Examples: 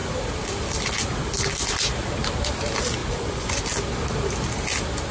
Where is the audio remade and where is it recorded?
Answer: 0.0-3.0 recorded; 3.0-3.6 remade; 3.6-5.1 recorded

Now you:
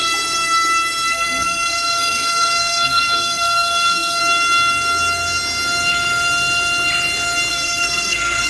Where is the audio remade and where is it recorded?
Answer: 0.0-1.1 recorded; 1.1-4.2 remade; 4.2-7.5 recorded; 7.5-8.5 remade

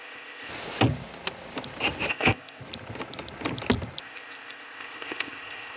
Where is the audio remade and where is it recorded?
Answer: 0.0-0.5 remade; 0.5-2.1 recorded; 2.1-2.6 remade; 2.6-4.0 recorded; 4.0-5.8 remade

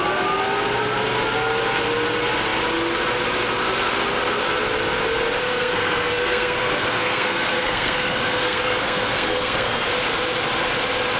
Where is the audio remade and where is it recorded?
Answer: 0.0-5.4 recorded; 5.4-9.9 remade; 9.9-11.2 recorded